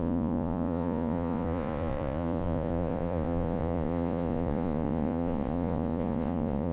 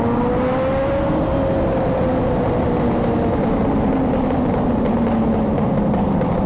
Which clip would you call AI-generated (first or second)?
first